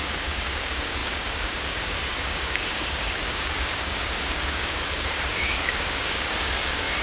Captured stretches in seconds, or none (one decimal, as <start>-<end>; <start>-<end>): none